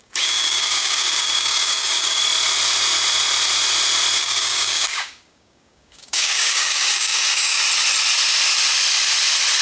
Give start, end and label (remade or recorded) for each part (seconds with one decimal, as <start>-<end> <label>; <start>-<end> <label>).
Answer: 0.0-2.2 remade; 2.2-4.2 recorded; 4.2-7.6 remade; 7.6-9.6 recorded